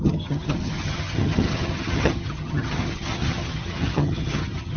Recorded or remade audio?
remade